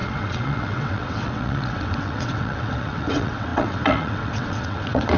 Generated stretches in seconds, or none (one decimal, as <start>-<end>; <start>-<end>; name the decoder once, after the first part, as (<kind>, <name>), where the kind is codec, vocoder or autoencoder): 0.0-5.2 (vocoder, WaveNeXt)

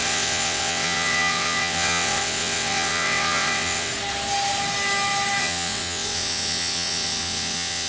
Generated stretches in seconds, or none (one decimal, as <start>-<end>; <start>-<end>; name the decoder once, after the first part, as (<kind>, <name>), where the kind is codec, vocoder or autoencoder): 0.0-3.9 (vocoder, WaveNeXt); 5.4-7.9

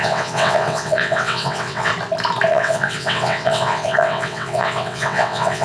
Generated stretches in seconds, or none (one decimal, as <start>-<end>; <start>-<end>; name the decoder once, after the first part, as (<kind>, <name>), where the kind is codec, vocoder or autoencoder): 0.0-1.9 (vocoder, WaveNeXt); 2.5-5.6

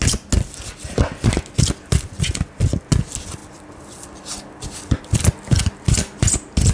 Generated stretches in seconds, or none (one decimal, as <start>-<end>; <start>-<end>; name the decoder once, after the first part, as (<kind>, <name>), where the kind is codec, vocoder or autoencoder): none

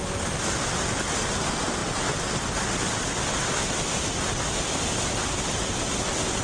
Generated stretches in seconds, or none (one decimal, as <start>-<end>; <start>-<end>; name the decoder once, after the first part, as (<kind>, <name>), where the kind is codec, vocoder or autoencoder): none

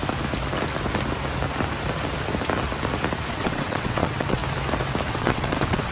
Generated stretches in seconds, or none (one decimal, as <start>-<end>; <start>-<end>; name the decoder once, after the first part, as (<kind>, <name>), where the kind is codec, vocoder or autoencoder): 3.3-4.4 (vocoder, WaveNeXt); 5.1-5.9

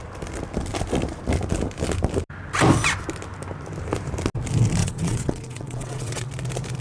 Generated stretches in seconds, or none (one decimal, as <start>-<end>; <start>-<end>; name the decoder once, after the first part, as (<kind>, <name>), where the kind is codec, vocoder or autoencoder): 4.8-6.3 (vocoder, WaveNeXt)